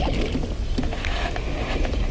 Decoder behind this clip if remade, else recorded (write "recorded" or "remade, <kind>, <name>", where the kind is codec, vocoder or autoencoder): recorded